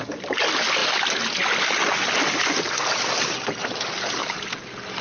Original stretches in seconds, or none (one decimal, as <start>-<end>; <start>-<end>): 0.0-5.0

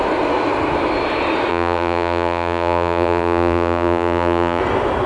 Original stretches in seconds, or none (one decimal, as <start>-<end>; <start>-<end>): 0.0-1.5; 4.6-5.1

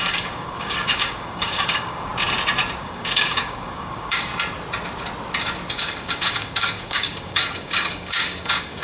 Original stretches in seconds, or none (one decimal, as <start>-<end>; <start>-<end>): 2.1-2.8; 4.3-5.7

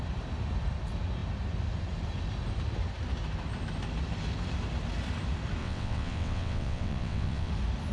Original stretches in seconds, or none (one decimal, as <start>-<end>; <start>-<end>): 0.0-5.6; 7.5-7.9

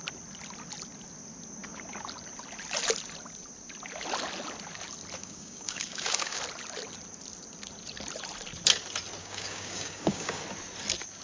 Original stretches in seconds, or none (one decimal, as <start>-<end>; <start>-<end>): 0.0-5.2; 6.4-9.2; 10.4-11.2